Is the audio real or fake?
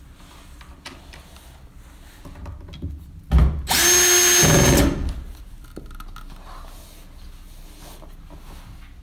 real